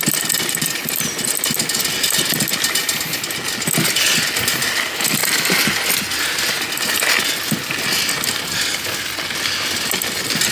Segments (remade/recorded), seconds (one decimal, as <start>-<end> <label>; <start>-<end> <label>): 0.0-10.5 recorded

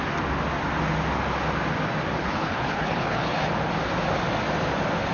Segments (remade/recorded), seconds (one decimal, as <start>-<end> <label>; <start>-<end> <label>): 0.0-2.2 recorded; 2.2-3.5 remade; 3.5-5.1 recorded